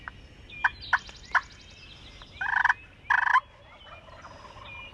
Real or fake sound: real